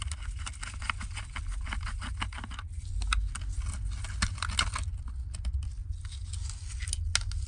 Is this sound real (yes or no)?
yes